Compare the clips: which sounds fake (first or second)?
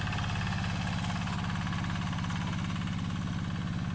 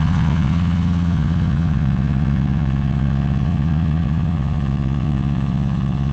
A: second